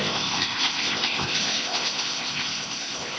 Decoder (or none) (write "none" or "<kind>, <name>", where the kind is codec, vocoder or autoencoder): codec, ZipCodec